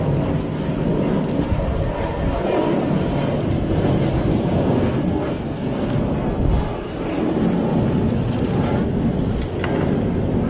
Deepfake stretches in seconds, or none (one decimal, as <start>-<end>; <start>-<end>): 4.3-6.0